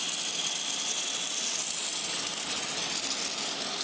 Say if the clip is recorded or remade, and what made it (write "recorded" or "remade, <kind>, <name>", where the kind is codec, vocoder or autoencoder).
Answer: recorded